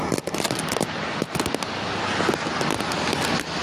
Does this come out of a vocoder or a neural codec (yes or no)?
no